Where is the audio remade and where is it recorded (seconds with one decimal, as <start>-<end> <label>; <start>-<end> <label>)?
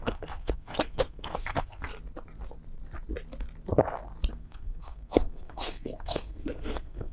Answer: 0.0-1.9 remade; 1.9-4.3 recorded; 4.3-7.1 remade